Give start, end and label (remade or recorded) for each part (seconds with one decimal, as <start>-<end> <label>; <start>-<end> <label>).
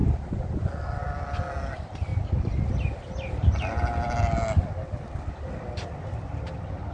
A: 0.0-6.9 recorded